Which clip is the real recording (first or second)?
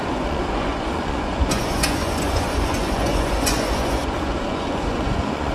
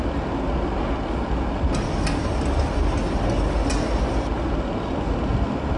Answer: second